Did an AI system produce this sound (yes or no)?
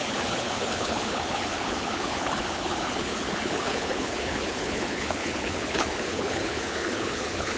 yes